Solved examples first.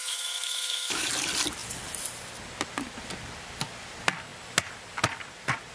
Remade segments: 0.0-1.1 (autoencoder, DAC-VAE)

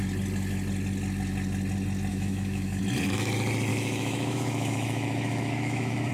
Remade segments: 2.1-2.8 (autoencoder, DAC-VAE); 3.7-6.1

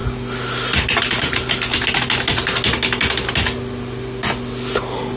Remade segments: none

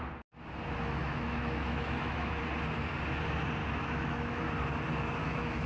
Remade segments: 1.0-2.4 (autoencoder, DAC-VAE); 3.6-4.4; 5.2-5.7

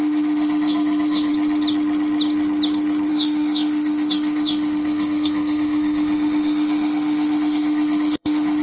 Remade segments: 0.0-1.3 (autoencoder, DAC-VAE); 3.1-8.6